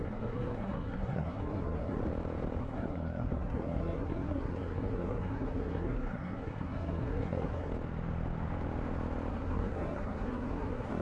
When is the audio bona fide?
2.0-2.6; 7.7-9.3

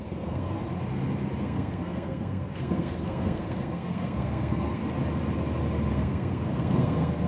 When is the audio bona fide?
0.6-1.4; 4.8-5.9

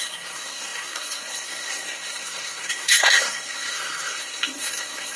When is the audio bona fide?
none

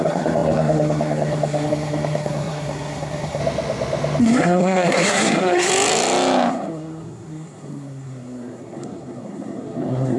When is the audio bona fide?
3.4-4.2; 5.7-6.5